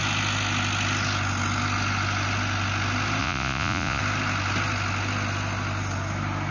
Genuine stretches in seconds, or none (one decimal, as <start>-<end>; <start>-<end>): 0.0-3.2; 4.0-6.5